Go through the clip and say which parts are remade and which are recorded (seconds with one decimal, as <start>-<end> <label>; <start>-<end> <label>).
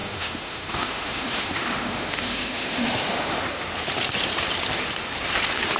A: 0.0-3.4 remade; 3.4-5.8 recorded